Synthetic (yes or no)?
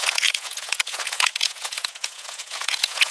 yes